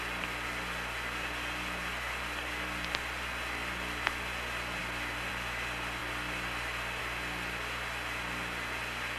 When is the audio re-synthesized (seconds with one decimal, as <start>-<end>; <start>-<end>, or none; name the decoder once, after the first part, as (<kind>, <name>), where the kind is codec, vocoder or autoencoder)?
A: none